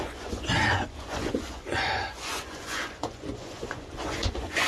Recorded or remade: remade